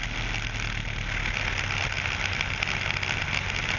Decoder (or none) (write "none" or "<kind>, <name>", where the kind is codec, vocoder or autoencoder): none